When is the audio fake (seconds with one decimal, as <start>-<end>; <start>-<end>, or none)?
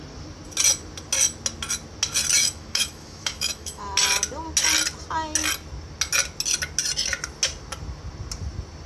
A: 2.4-3.8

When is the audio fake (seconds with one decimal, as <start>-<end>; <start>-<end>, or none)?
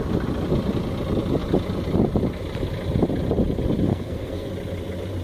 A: 3.9-4.5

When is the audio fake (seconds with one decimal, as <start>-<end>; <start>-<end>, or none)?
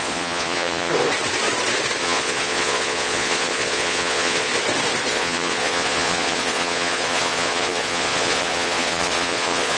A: 0.0-0.9; 2.0-4.5; 5.1-9.8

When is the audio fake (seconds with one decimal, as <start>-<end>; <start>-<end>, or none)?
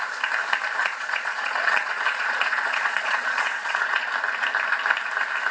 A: 0.8-4.1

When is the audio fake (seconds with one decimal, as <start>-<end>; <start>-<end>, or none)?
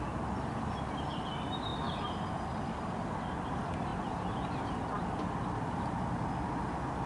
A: none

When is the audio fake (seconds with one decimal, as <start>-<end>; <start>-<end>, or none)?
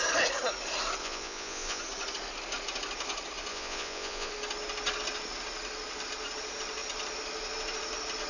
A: 1.0-1.8; 3.5-4.3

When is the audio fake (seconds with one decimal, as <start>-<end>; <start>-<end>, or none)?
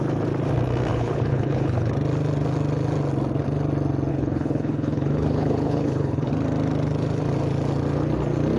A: 0.9-1.9; 4.1-6.3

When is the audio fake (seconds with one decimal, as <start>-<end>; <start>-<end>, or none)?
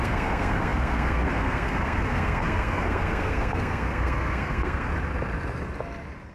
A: 0.0-4.9